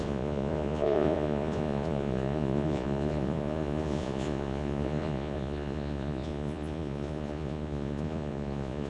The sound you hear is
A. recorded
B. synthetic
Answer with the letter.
B